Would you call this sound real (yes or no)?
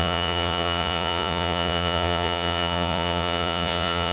no